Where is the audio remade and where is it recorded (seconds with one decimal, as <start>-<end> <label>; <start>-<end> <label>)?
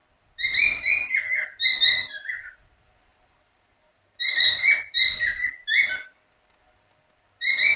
0.0-3.1 recorded; 3.1-4.5 remade; 4.5-7.8 recorded